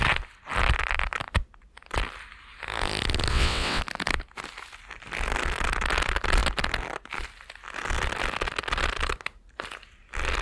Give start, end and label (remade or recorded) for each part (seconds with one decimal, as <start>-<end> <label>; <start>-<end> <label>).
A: 0.0-3.3 recorded; 3.3-3.8 remade; 3.8-10.4 recorded